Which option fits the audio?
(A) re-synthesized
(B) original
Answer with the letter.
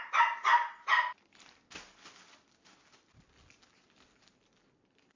B